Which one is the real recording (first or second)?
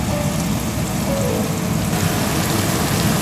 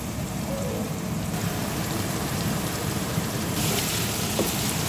first